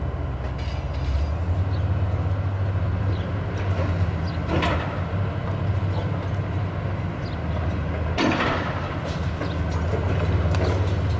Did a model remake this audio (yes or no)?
no